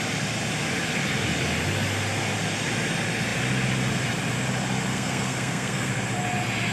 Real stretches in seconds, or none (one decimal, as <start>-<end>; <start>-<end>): 0.0-4.9; 5.9-6.7